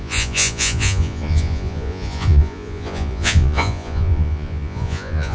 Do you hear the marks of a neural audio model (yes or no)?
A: yes